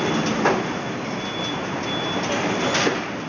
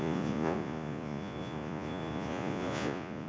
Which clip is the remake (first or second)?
second